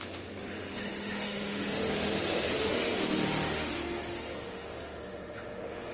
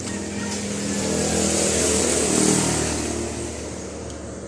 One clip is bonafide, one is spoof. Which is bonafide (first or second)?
second